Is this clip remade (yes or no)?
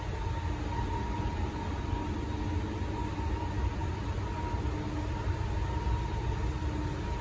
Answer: no